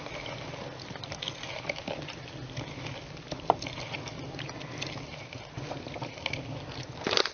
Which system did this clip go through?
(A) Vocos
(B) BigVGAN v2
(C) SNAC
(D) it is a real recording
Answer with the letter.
D